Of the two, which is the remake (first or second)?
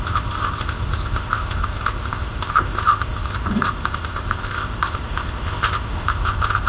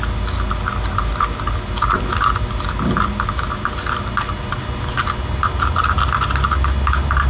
first